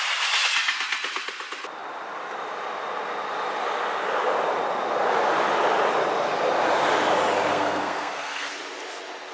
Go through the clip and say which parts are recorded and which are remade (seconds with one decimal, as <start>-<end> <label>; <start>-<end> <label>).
0.0-7.5 recorded; 7.5-8.5 remade; 8.5-9.3 recorded